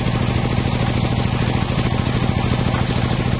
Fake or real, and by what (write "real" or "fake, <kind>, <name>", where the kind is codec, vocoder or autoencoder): real